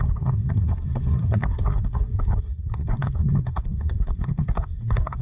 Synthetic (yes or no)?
yes